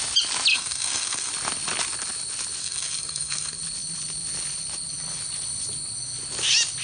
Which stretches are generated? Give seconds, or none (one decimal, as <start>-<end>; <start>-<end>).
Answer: 0.5-1.3; 2.6-3.6